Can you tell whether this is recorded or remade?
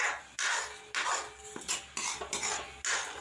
recorded